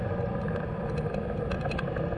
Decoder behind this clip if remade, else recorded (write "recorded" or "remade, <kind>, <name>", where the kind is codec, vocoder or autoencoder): recorded